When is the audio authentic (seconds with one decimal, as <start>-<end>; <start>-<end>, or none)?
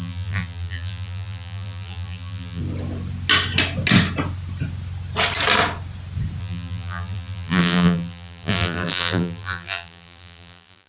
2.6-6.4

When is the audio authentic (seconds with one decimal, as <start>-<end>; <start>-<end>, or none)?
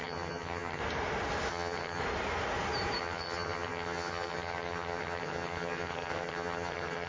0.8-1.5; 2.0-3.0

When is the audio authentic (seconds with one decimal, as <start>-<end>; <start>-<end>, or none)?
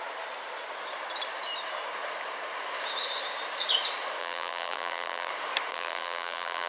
0.0-4.2; 5.3-5.7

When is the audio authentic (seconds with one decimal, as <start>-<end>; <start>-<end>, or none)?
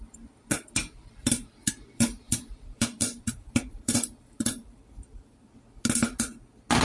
0.0-0.8; 4.9-6.8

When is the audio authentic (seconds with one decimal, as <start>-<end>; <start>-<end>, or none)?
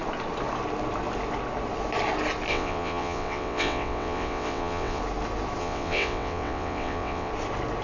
0.0-2.5; 5.0-5.6; 7.3-7.8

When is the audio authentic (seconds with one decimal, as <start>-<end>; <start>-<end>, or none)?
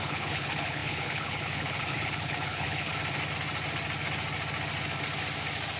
2.9-5.8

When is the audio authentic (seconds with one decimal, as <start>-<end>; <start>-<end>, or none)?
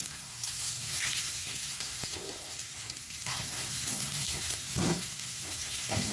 none